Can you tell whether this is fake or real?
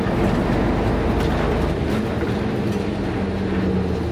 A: real